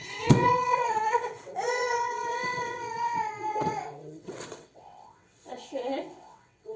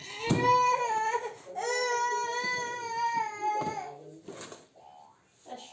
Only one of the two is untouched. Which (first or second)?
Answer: second